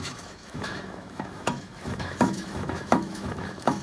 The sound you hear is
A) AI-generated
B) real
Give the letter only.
A